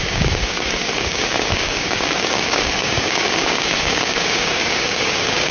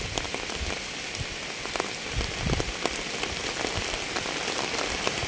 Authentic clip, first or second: second